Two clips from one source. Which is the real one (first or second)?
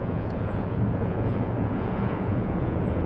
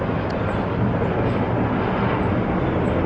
second